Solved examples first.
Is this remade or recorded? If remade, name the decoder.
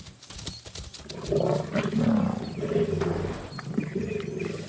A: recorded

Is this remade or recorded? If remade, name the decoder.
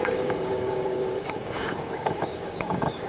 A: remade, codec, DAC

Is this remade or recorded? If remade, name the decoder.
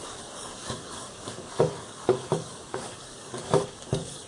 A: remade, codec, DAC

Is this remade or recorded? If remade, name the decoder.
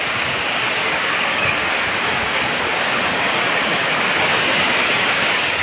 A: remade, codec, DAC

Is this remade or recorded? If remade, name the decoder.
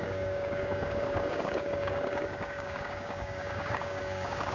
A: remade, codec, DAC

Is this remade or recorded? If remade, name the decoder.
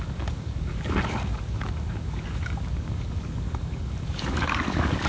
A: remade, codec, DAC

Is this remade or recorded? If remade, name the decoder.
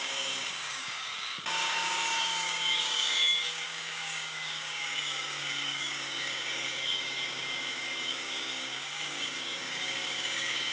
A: remade, codec, DAC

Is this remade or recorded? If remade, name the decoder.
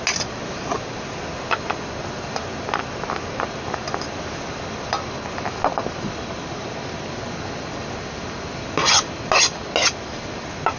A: recorded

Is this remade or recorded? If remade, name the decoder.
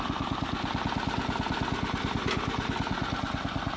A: recorded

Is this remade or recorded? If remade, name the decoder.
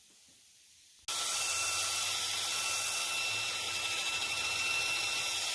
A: recorded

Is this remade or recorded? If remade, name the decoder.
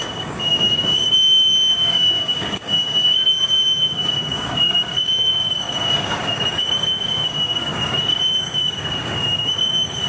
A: remade, codec, DAC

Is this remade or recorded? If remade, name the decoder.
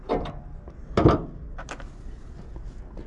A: recorded